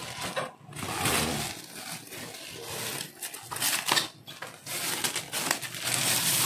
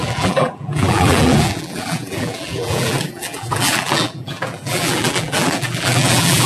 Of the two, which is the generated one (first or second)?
second